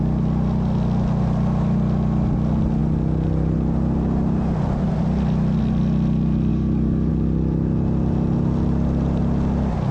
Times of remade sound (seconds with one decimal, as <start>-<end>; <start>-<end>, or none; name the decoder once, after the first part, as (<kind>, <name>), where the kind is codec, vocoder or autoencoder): 6.5-7.1 (codec, DAC)